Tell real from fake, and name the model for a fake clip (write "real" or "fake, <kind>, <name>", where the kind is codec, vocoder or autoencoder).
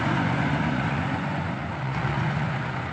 fake, vocoder, Vocos